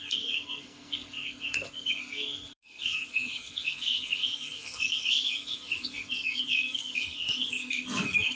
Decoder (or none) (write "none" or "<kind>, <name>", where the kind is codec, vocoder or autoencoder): codec, SNAC